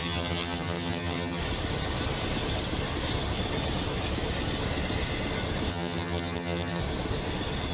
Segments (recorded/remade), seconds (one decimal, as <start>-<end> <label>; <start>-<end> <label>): 0.0-1.4 remade; 1.4-5.7 recorded; 5.7-6.8 remade; 6.8-7.7 recorded